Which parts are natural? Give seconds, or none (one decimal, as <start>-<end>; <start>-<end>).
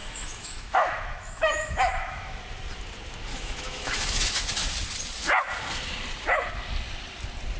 2.4-3.3; 4.3-7.6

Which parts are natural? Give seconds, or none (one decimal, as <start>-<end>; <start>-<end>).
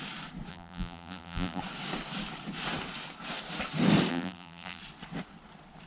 0.0-0.5; 1.6-4.1; 4.8-5.9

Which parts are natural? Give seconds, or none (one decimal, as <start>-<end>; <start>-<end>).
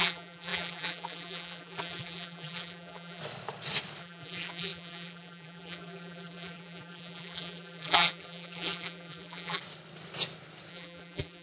3.2-4.0; 9.6-10.7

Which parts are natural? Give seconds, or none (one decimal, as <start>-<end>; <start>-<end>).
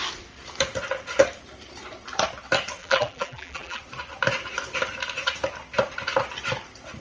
0.0-2.8; 3.8-7.0